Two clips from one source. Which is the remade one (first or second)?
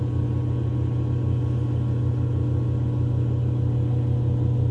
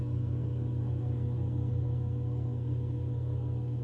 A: second